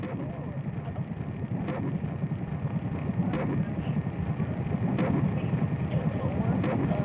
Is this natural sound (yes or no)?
yes